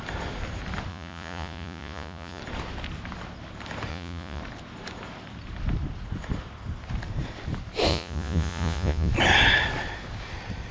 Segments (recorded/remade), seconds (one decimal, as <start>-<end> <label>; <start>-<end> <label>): 0.0-0.9 recorded; 0.9-2.4 remade; 2.4-3.9 recorded; 3.9-4.4 remade; 4.4-7.9 recorded; 7.9-9.1 remade; 9.1-10.7 recorded